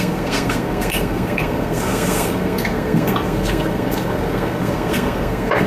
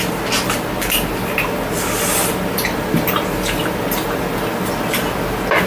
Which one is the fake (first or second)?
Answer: first